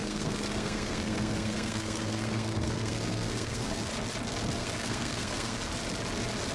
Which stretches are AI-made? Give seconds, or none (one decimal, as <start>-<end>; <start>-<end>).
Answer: 0.0-3.9; 4.6-5.6